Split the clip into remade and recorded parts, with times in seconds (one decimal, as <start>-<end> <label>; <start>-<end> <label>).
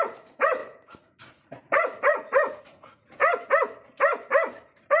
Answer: 0.0-3.2 remade; 3.2-5.0 recorded